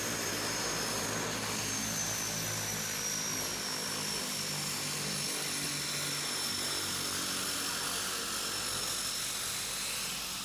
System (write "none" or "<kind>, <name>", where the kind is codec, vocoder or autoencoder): none